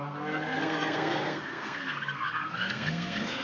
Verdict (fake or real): fake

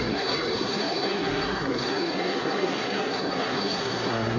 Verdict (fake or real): fake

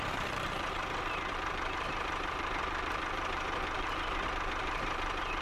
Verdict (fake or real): fake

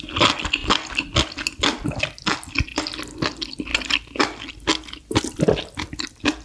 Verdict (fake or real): real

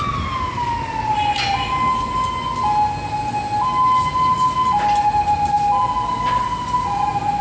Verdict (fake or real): real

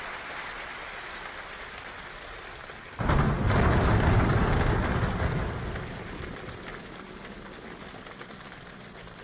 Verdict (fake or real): real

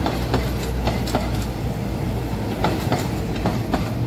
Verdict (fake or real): real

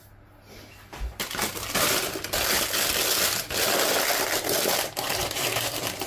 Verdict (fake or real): real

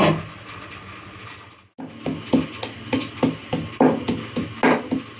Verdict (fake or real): real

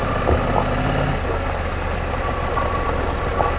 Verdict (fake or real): real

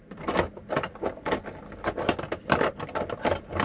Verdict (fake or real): real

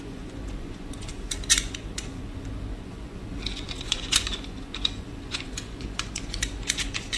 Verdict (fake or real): fake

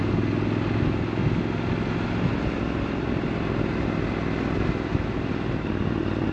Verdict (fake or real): real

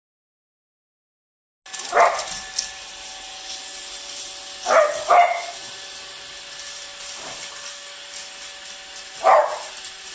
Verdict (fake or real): real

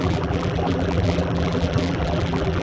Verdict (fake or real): fake